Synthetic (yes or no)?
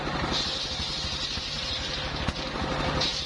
no